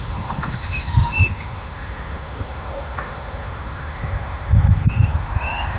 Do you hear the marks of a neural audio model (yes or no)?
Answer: yes